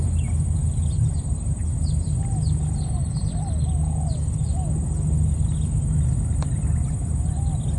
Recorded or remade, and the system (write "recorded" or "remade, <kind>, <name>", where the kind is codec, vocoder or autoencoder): recorded